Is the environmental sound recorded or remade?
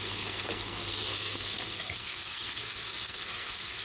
remade